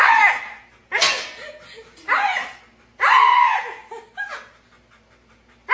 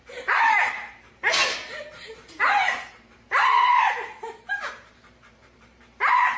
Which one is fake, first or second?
second